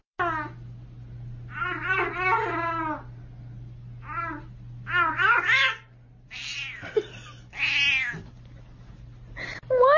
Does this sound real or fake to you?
real